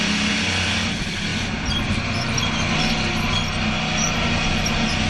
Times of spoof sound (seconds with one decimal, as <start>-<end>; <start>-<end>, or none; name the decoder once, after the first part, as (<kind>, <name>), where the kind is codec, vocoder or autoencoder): none